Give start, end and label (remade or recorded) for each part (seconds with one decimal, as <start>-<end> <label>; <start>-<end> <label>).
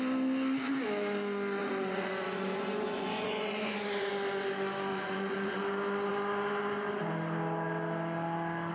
0.0-1.6 recorded; 1.6-4.1 remade; 4.1-4.9 recorded; 4.9-5.6 remade; 5.6-8.7 recorded